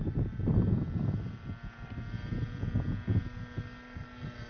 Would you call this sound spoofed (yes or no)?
no